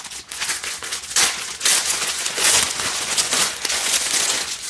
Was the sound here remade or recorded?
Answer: remade